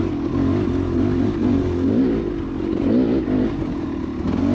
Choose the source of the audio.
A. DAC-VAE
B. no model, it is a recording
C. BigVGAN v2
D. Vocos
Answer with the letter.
B